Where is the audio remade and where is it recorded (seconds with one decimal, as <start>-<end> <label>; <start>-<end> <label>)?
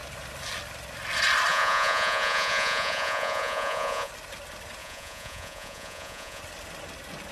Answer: 0.0-1.5 recorded; 1.5-4.1 remade; 4.1-4.8 recorded; 4.8-6.4 remade; 6.4-7.3 recorded